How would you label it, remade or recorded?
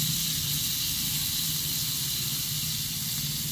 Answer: recorded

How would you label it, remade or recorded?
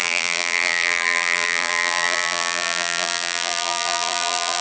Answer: remade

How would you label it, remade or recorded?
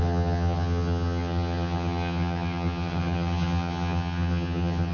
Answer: remade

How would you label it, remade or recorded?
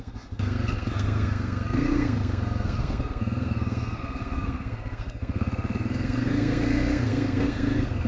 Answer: remade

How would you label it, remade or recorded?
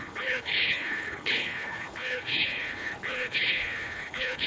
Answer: remade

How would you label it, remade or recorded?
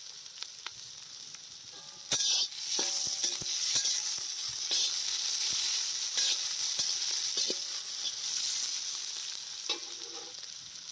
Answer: recorded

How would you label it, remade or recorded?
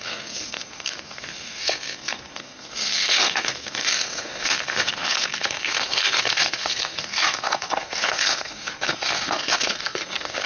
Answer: remade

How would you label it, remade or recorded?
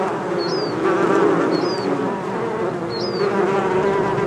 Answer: recorded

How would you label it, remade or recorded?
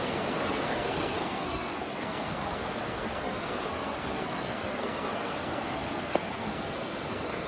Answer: remade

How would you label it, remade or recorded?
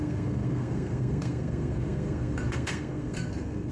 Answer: remade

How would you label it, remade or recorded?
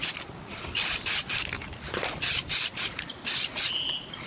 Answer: recorded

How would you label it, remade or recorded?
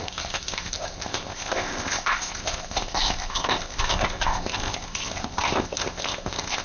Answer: remade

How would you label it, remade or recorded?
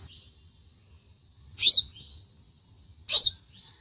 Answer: recorded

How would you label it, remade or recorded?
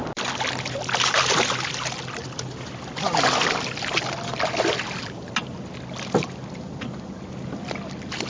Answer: recorded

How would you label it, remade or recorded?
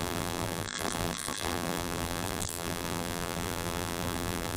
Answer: remade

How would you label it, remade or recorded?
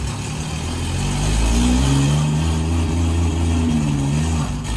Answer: recorded